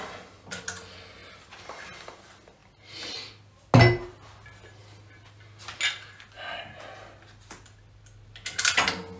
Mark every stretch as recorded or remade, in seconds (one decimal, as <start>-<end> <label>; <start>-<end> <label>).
0.0-9.2 recorded